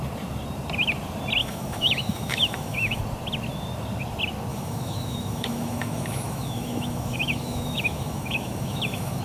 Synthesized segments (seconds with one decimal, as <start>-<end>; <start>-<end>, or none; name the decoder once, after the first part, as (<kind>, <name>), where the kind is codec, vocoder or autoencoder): 1.4-3.0 (autoencoder, DAC-VAE); 4.5-9.2